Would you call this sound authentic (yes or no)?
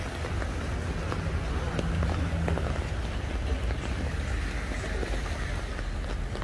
yes